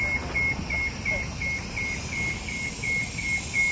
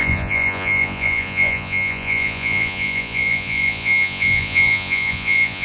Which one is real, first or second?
first